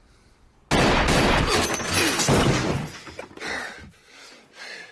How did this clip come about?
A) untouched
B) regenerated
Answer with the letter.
A